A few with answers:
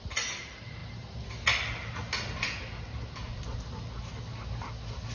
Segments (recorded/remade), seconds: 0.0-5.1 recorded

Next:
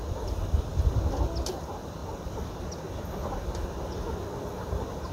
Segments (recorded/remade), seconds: 0.0-5.1 recorded

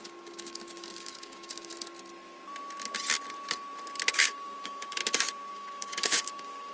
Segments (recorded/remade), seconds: 0.0-1.7 remade; 1.7-4.1 recorded; 4.1-5.0 remade; 5.0-5.5 recorded; 5.5-6.7 remade

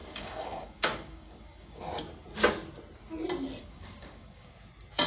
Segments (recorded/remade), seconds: 0.0-1.8 remade; 1.8-3.6 recorded; 3.6-4.5 remade; 4.5-5.1 recorded

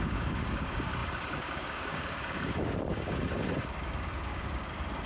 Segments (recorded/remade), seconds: 0.0-3.2 remade; 3.2-3.8 recorded; 3.8-5.1 remade

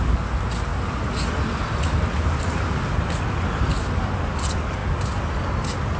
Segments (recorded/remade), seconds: 0.0-6.0 recorded

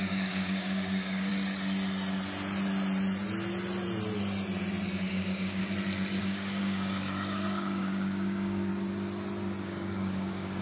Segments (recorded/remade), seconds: 0.0-1.3 remade; 1.3-4.9 recorded; 4.9-5.6 remade; 5.6-6.2 recorded; 6.2-8.7 remade; 8.7-9.6 recorded; 9.6-10.6 remade

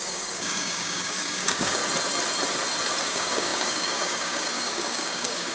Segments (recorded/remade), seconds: 0.0-1.8 remade; 1.8-3.0 recorded; 3.0-5.5 remade